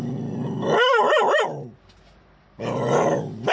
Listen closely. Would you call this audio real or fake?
real